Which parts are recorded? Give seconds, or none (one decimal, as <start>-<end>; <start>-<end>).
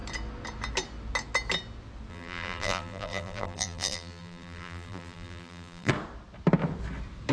0.0-2.1; 5.9-7.3